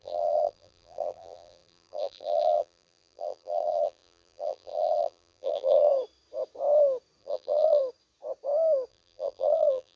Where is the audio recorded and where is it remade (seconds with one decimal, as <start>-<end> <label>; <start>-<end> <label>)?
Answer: 0.0-5.9 remade; 5.9-7.2 recorded; 7.2-7.8 remade; 7.8-8.9 recorded; 8.9-10.0 remade